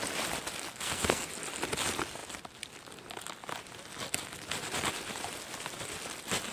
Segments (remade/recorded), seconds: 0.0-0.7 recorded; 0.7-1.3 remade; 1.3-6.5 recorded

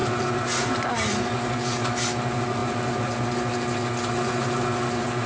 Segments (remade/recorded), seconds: 0.0-5.3 recorded

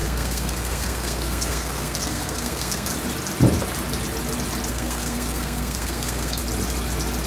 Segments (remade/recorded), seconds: 0.0-2.9 remade; 2.9-4.7 recorded; 4.7-6.4 remade; 6.4-7.3 recorded

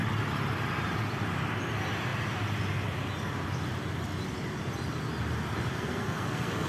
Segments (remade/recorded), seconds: 0.0-5.7 recorded; 5.7-6.7 remade

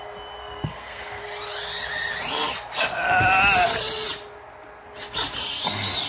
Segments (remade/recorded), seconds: 0.0-0.4 recorded; 0.4-1.2 remade; 1.2-6.1 recorded

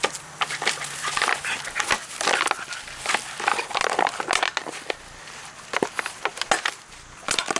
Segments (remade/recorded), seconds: 0.0-7.6 recorded

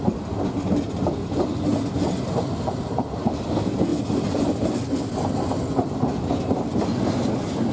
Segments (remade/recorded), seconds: 0.0-7.7 recorded

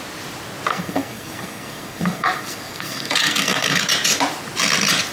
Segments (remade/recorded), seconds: 0.0-0.7 recorded; 0.7-3.8 remade; 3.8-5.1 recorded